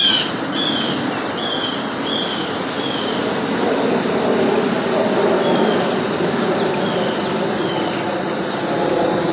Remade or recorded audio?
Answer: recorded